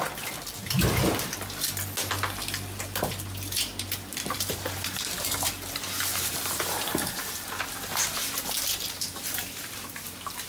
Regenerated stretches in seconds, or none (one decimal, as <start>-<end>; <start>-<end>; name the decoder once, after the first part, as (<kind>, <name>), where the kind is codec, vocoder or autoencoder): 4.1-5.2 (vocoder, BigVGAN v2); 6.1-10.5